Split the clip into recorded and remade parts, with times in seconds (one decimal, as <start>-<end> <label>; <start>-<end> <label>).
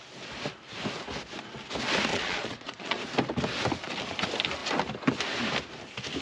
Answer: 0.0-2.1 recorded; 2.1-3.0 remade; 3.0-6.2 recorded